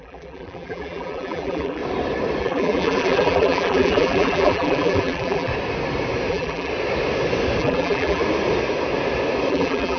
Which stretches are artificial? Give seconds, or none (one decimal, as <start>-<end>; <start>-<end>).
0.0-1.8; 2.4-5.5; 6.3-6.7; 7.6-8.2; 9.5-10.0